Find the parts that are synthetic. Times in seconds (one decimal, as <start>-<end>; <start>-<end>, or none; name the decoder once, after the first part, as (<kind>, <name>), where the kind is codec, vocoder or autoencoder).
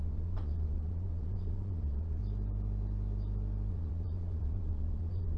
0.0-2.2 (vocoder, Vocos); 3.7-5.4